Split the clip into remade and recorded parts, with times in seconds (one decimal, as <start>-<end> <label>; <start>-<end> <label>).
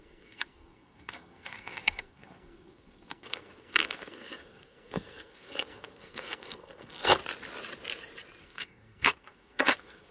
0.0-7.2 remade; 7.2-8.4 recorded; 8.4-10.1 remade